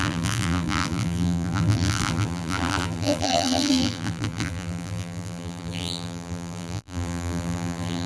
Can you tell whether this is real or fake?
fake